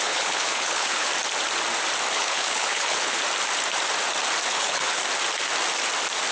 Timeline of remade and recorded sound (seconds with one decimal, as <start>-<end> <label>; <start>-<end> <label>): 0.0-1.1 remade; 1.1-2.1 recorded; 2.1-3.2 remade; 3.2-4.5 recorded; 4.5-5.0 remade; 5.0-6.3 recorded